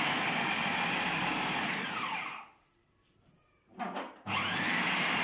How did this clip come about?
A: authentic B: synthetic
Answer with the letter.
A